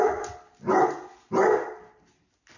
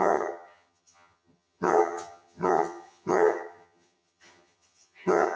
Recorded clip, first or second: first